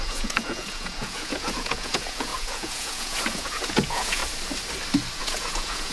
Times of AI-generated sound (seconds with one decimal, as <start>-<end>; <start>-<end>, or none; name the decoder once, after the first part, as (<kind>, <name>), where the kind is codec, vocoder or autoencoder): 0.0-4.2 (vocoder, Vocos); 5.2-5.9